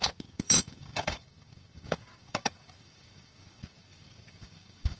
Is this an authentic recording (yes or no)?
no